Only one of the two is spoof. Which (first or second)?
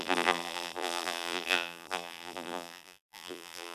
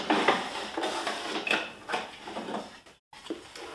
first